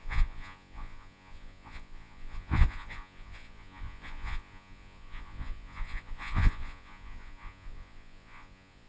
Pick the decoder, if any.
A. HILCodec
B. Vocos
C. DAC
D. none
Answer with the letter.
B